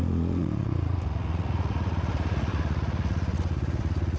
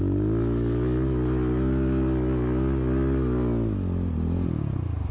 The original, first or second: second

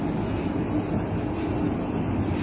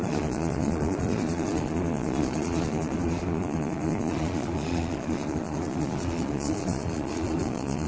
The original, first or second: first